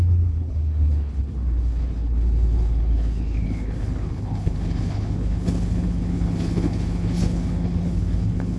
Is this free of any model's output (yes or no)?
no